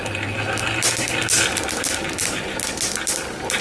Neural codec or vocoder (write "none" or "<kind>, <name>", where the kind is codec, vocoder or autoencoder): none